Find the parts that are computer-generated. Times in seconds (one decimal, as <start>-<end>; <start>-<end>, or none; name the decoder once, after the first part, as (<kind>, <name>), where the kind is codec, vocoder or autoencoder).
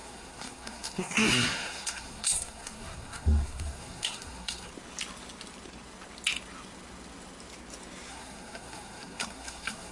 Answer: 0.0-4.7 (codec, SNAC); 8.1-9.9